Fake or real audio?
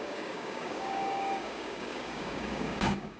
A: fake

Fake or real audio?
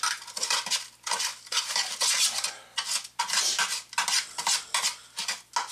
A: real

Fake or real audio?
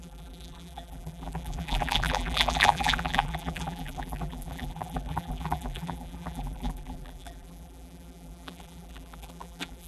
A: fake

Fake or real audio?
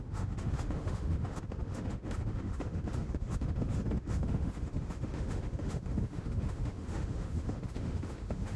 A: fake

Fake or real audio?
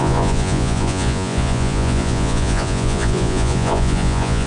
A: fake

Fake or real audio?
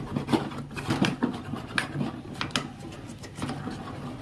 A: real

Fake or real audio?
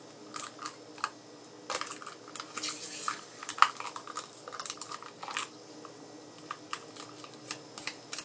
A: real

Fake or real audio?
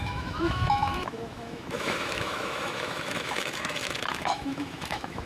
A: fake